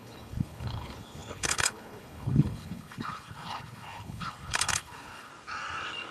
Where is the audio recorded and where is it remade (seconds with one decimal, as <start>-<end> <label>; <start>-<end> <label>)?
0.0-5.3 remade; 5.3-6.1 recorded